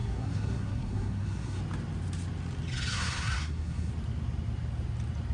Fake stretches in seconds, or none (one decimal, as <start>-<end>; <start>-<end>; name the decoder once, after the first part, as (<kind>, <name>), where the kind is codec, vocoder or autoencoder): 0.0-1.6 (codec, SNAC); 2.9-3.9